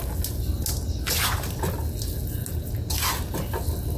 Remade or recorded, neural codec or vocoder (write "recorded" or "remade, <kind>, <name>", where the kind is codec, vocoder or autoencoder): recorded